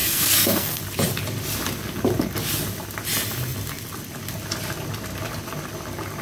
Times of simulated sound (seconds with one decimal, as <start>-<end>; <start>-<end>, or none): 0.0-0.8